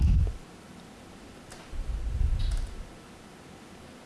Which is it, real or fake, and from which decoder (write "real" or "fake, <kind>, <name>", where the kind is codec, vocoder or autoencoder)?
real